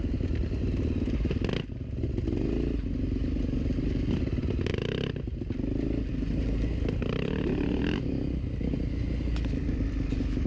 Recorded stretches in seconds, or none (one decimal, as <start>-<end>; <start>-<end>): 0.0-10.5